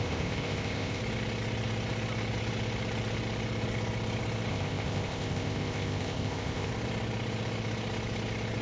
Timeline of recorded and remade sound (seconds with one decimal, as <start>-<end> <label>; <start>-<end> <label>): 0.0-1.0 remade; 1.0-4.5 recorded; 4.5-6.7 remade; 6.7-8.6 recorded